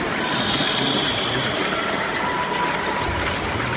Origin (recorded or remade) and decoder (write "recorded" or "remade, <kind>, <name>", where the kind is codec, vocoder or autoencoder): recorded